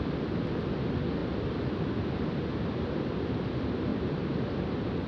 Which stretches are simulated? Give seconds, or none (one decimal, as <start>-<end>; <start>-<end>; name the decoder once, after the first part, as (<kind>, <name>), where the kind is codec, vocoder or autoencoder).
none